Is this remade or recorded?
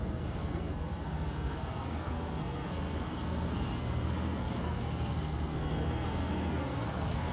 remade